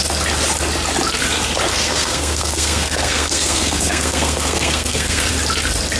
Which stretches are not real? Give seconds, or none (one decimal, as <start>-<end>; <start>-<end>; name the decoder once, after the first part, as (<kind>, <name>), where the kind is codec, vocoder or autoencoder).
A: 1.7-5.3 (codec, SNAC)

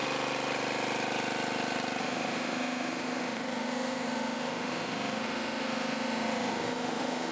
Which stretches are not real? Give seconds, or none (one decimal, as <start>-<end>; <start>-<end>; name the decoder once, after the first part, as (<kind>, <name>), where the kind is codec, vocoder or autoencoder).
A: 2.0-7.3 (autoencoder, DAC-VAE)